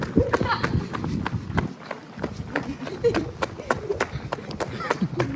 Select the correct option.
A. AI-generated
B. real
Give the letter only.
B